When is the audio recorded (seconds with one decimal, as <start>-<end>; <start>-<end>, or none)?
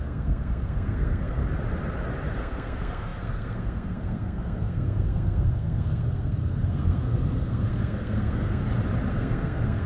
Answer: 1.4-2.3; 8.6-9.1